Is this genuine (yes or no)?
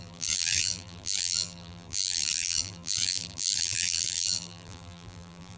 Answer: no